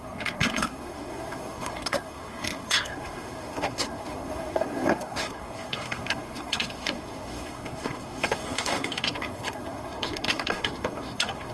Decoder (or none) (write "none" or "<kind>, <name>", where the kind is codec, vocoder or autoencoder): codec, SNAC